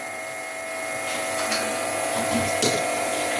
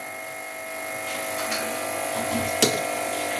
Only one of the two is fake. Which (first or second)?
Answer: first